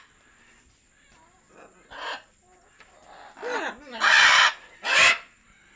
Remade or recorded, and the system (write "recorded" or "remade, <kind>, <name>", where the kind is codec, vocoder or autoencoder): recorded